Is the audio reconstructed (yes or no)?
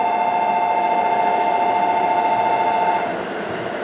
no